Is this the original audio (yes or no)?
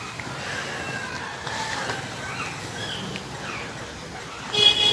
yes